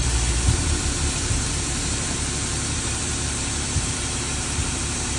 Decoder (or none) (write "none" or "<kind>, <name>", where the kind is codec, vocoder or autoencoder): vocoder, BigVGAN v2